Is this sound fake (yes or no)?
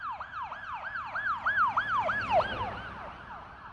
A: no